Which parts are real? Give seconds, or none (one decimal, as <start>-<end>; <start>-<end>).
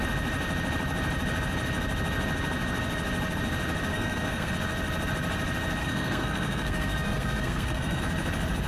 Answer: 0.0-3.9; 4.5-5.8; 8.0-8.7